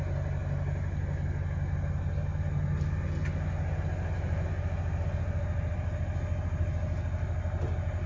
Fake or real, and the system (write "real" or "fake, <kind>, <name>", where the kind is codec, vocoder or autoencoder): real